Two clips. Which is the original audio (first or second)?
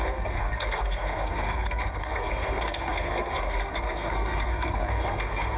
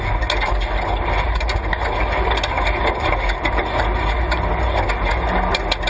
second